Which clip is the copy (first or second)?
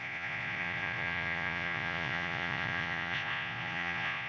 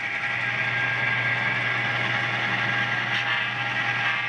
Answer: first